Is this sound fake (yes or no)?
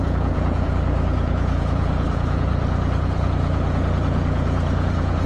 yes